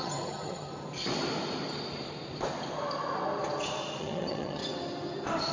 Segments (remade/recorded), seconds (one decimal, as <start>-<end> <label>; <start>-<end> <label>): 0.0-0.7 remade; 0.7-4.0 recorded; 4.0-4.6 remade; 4.6-5.5 recorded